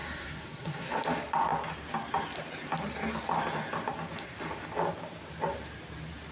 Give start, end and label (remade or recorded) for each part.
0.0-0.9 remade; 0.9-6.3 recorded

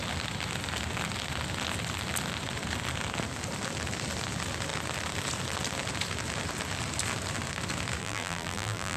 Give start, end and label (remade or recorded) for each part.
0.0-8.0 recorded; 8.0-9.0 remade

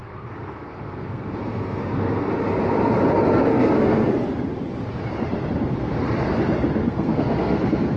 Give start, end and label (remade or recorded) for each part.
0.0-2.3 remade; 2.3-3.5 recorded; 3.5-4.1 remade; 4.1-6.8 recorded; 6.8-8.0 remade